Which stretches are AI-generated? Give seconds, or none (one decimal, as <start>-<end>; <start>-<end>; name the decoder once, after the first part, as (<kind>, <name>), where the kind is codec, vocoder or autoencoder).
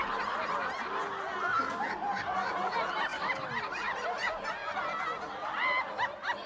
none